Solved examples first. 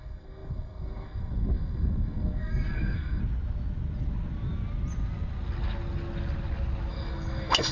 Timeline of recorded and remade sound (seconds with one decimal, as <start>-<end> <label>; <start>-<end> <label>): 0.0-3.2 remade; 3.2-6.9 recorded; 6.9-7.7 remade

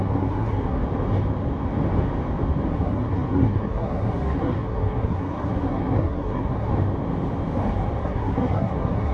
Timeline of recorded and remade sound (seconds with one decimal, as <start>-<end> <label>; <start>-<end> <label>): 0.0-0.8 remade; 0.8-2.7 recorded; 2.7-6.7 remade; 6.7-8.0 recorded; 8.0-9.1 remade

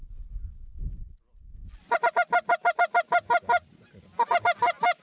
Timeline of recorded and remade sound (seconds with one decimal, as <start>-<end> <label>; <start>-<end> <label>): 0.0-5.0 recorded